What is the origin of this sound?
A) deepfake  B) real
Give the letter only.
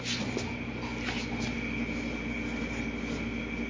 B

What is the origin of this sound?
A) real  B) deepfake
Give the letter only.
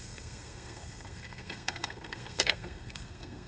B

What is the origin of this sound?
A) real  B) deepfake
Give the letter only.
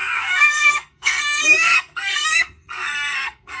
B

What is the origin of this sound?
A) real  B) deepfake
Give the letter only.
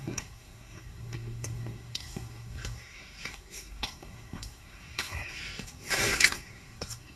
B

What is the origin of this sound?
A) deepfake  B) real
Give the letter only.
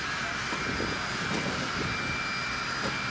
B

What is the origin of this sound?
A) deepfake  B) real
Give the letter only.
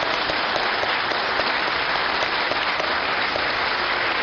B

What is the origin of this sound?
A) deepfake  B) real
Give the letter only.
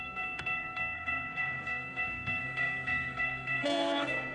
A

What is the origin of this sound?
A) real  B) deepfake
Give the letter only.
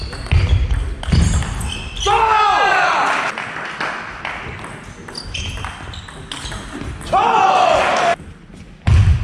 A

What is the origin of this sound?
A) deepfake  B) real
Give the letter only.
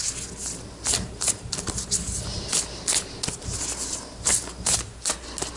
B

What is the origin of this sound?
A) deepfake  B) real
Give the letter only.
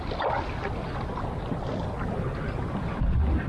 B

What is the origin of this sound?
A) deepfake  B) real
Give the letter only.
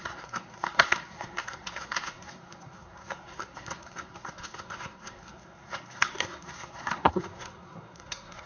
A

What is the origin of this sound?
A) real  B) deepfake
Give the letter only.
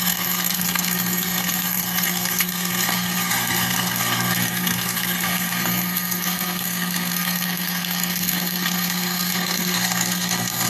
B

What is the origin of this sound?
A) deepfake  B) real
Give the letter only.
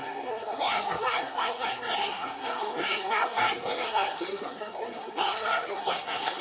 A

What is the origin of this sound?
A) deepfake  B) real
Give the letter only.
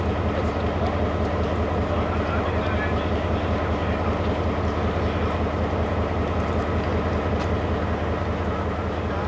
B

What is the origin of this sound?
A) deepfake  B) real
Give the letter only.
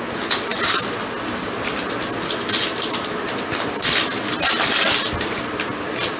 B